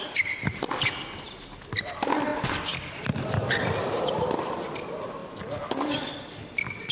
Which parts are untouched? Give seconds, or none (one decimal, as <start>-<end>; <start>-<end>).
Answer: 0.0-6.9